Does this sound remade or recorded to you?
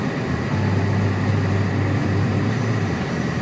recorded